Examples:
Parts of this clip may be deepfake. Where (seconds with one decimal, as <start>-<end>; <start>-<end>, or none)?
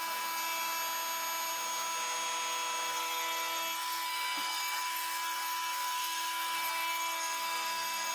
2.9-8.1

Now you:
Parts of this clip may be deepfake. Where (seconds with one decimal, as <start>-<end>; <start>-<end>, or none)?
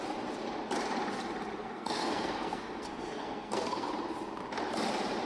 1.6-3.9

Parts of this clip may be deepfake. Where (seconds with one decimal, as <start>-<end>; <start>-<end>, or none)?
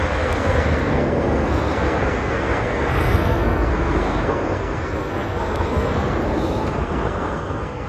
0.0-6.2; 6.7-7.9